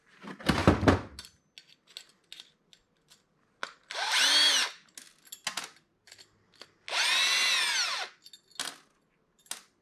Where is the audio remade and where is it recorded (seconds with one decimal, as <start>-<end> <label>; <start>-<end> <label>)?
0.0-9.8 recorded